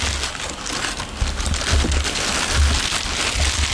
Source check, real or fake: real